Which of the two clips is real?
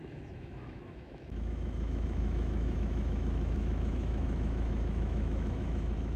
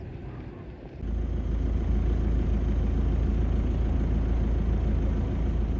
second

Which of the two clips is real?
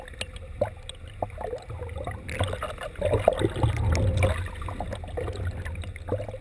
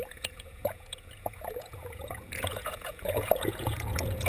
first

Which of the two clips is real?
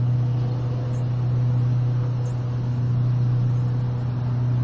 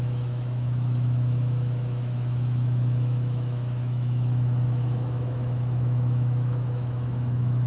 first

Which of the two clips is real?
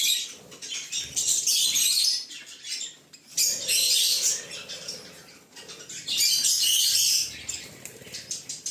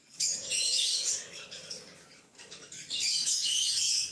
first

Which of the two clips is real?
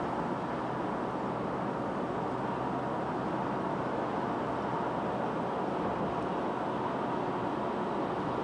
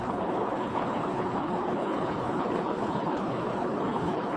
first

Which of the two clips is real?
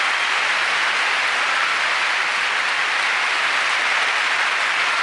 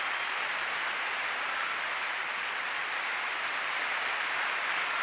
first